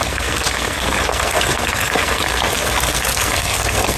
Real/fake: fake